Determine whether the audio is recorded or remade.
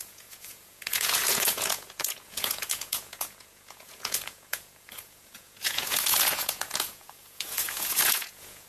remade